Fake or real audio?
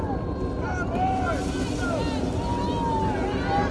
real